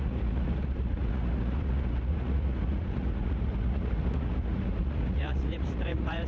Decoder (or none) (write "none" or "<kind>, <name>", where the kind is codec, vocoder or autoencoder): vocoder, Vocos